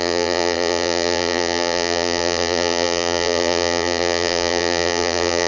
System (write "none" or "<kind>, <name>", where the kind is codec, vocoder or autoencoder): vocoder, BigVGAN v2